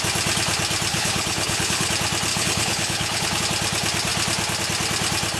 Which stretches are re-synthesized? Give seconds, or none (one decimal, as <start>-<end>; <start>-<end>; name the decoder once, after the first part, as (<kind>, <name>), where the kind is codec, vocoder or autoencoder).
0.9-1.9 (codec, HILCodec); 2.3-3.4